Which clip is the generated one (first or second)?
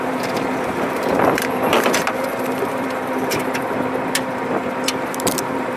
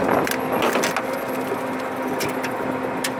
first